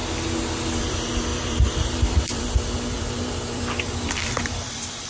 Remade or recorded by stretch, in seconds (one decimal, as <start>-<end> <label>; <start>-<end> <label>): 0.0-0.8 recorded; 0.8-5.1 remade